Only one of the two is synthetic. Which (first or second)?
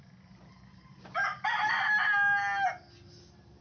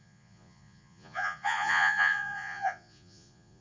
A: second